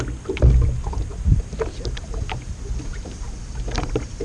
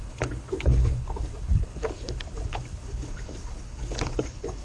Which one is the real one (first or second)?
first